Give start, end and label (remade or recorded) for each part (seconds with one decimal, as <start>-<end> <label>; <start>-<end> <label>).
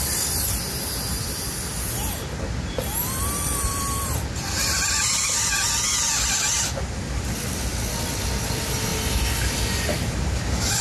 0.0-10.8 recorded